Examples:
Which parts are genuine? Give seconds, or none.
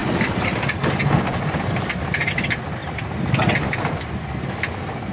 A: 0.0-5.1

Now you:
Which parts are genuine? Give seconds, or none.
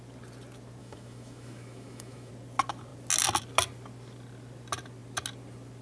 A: 0.0-0.8; 2.3-5.8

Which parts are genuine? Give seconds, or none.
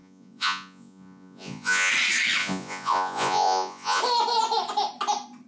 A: 1.9-2.4; 4.0-5.5